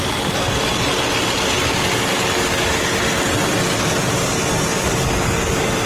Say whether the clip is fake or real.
real